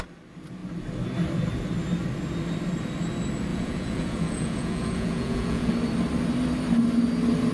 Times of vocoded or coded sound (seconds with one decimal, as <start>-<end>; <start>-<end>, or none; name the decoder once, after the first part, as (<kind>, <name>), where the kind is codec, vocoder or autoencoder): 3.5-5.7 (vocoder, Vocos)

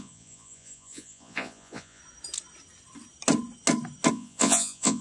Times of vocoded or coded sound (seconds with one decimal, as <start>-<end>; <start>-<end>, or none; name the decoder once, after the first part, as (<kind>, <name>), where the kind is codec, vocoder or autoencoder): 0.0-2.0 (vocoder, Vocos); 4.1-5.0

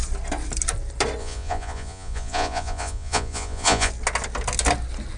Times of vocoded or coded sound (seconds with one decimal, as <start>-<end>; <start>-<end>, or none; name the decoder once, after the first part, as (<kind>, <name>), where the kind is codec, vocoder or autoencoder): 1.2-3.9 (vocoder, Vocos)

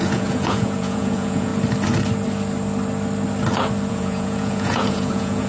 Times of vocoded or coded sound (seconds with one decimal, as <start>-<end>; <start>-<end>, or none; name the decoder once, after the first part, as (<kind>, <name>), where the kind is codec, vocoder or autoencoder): 0.0-1.5 (vocoder, Vocos); 3.9-5.5

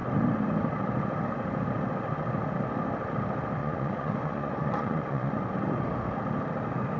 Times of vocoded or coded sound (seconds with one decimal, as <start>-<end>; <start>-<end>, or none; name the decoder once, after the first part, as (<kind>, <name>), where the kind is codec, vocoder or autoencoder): 3.6-5.5 (vocoder, Vocos)

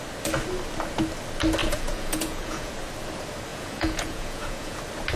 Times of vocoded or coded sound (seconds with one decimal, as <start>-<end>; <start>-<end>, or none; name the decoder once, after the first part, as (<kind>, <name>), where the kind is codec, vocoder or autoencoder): 1.6-2.7 (vocoder, Vocos); 3.5-4.8

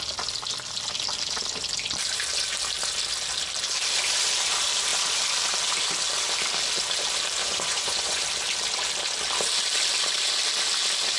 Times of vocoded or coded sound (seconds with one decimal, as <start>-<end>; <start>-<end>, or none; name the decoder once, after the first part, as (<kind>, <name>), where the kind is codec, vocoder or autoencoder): 7.4-8.2 (vocoder, Vocos)